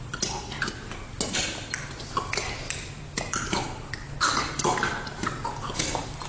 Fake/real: real